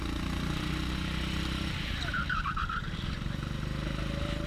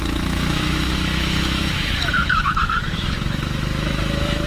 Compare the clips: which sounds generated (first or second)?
second